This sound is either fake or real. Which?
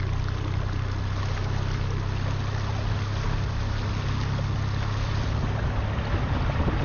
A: real